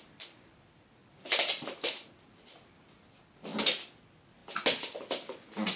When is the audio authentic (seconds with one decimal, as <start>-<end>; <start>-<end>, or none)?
0.0-5.8